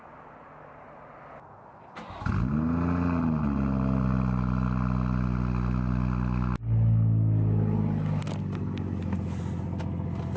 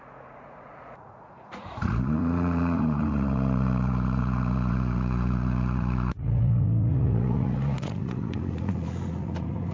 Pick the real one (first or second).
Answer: first